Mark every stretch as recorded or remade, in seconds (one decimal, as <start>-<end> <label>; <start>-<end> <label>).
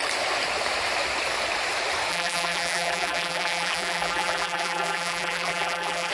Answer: 0.0-2.1 recorded; 2.1-6.1 remade